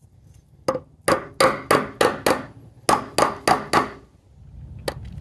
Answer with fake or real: real